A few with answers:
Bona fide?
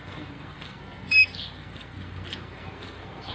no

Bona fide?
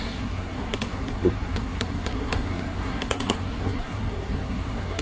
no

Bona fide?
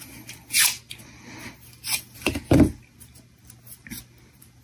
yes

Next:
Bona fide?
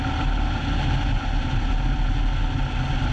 yes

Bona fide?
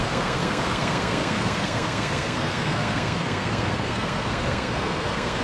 no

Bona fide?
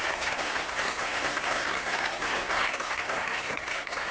no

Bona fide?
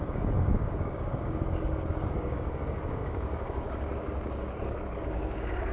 no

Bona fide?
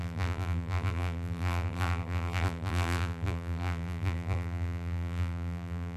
no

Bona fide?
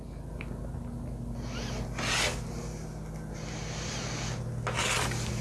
yes